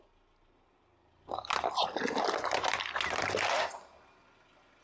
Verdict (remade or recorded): recorded